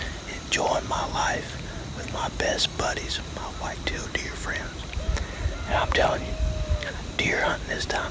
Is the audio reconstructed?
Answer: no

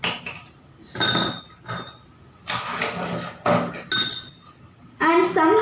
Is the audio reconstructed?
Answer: no